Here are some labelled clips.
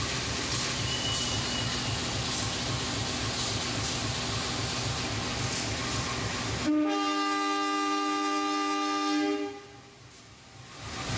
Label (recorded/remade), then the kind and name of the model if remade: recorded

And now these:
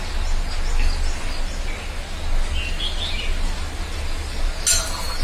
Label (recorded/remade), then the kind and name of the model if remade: recorded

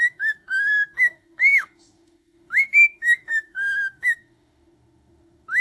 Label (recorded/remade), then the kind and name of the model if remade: remade, autoencoder, DAC-VAE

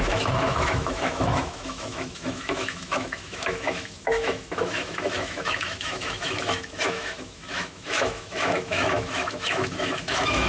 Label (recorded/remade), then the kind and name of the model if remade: remade, autoencoder, DAC-VAE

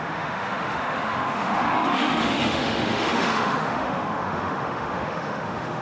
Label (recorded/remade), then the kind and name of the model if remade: remade, autoencoder, DAC-VAE